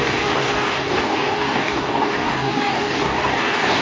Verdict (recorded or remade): remade